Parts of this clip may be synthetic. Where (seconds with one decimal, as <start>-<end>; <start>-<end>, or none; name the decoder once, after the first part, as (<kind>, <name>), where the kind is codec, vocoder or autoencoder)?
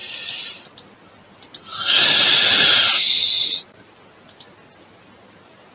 0.0-0.6 (vocoder, BigVGAN v2)